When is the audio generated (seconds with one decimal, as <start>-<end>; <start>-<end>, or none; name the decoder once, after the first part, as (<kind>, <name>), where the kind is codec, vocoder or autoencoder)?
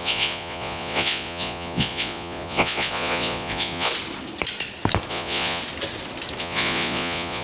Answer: 0.0-3.9 (vocoder, Vocos); 5.1-5.6; 6.4-7.4